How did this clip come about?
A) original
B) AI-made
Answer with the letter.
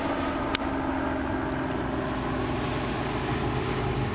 A